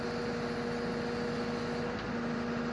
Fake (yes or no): no